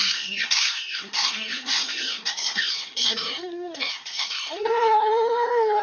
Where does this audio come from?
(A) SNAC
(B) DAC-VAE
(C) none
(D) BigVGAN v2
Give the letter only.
A